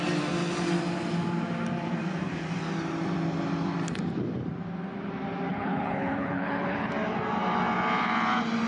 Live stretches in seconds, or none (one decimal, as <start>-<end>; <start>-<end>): 0.0-5.5; 6.9-8.7